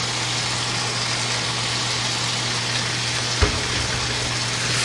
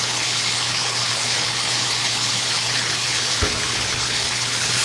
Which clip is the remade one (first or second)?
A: second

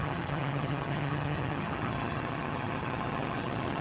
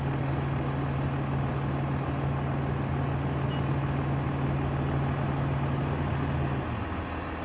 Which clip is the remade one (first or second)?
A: first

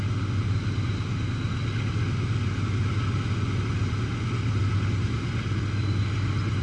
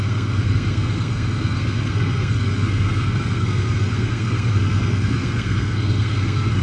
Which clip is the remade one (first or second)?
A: second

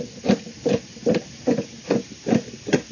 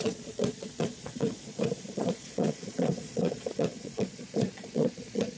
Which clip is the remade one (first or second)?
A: second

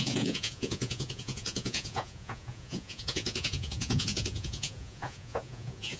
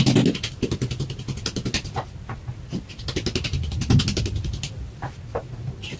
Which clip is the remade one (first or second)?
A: first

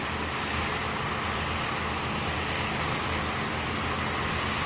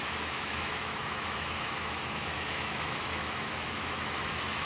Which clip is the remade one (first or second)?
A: second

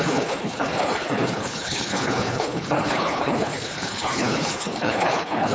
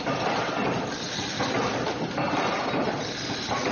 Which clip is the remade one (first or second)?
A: first